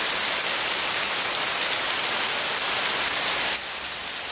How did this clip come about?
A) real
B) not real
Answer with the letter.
A